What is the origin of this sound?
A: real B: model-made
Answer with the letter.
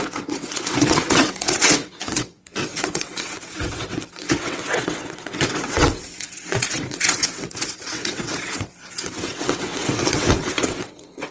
B